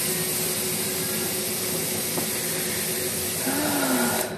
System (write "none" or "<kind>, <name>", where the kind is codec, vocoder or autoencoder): none